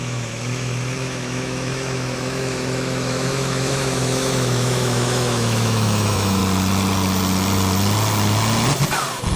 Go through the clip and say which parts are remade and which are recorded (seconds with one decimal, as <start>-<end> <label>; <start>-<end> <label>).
0.0-6.4 remade; 6.4-9.4 recorded